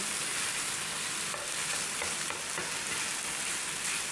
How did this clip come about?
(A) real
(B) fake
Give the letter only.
A